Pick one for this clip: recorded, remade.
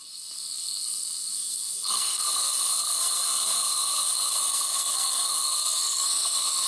remade